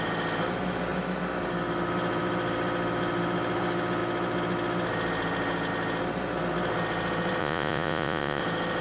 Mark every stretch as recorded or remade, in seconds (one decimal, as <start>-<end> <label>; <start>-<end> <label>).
0.0-7.4 recorded; 7.4-8.4 remade; 8.4-8.8 recorded